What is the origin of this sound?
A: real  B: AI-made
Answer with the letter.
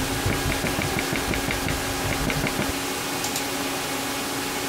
A